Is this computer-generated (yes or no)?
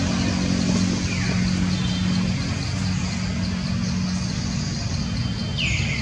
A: no